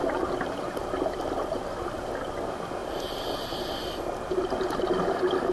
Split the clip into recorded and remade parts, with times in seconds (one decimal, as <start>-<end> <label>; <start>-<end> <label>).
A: 0.0-5.5 recorded